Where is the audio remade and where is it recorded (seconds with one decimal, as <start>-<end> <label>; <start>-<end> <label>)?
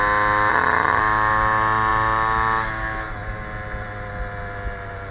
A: 0.0-0.5 recorded; 0.5-1.0 remade; 1.0-5.1 recorded